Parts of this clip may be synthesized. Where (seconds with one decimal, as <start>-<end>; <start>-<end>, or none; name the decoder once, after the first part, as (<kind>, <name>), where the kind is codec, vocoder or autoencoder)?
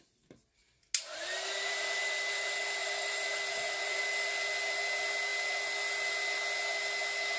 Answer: 1.1-2.0 (vocoder, BigVGAN v2); 2.8-4.0